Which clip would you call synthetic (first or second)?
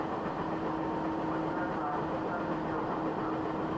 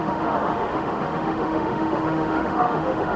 second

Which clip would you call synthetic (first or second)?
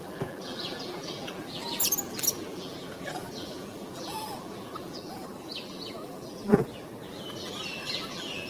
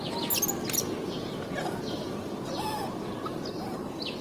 first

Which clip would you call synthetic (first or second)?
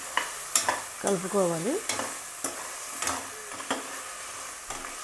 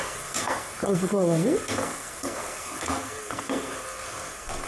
second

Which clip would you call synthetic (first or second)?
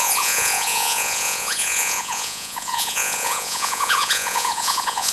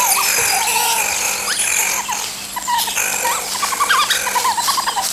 first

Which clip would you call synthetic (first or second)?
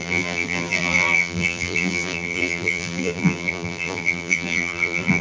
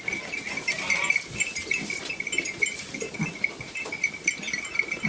first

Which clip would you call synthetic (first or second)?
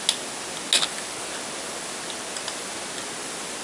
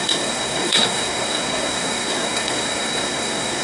second